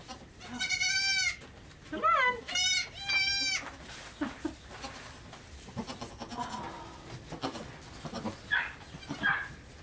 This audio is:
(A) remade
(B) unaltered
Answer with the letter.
B